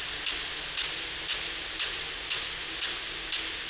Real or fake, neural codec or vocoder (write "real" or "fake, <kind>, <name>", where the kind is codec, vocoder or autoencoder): real